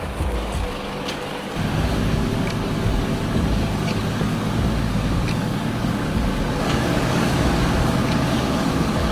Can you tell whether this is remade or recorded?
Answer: remade